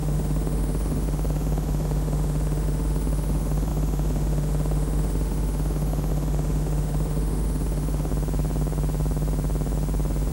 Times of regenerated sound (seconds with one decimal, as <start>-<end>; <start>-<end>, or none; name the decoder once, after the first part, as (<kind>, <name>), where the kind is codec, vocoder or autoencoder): 0.0-8.1 (autoencoder, DAC-VAE)